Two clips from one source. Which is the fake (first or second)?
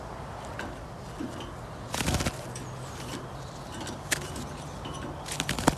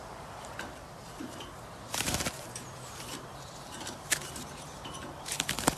second